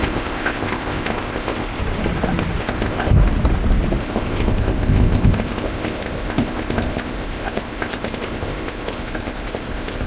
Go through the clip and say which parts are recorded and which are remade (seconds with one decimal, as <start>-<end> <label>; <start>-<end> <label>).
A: 0.0-1.8 remade; 1.8-2.6 recorded; 2.6-3.2 remade; 3.2-4.0 recorded; 4.0-10.1 remade